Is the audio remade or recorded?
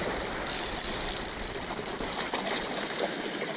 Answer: recorded